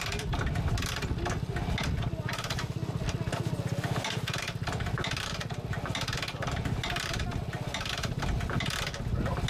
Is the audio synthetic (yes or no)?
no